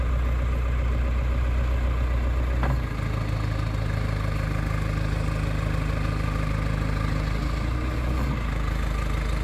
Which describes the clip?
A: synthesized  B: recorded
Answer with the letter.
B